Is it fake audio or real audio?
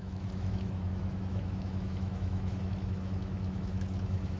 fake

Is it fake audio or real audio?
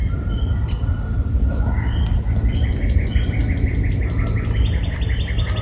real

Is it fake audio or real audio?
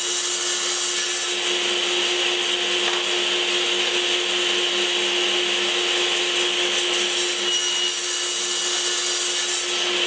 real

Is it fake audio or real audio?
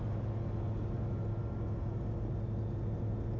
real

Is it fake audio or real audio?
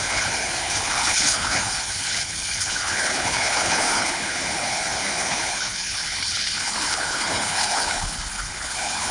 fake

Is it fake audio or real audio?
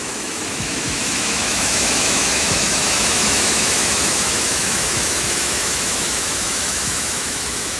fake